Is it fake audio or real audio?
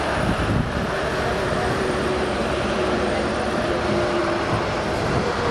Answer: fake